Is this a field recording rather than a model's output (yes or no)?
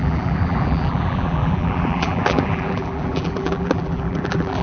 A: no